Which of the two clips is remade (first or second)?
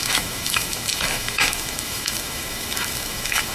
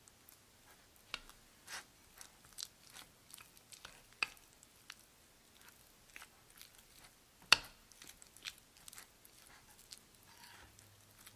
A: first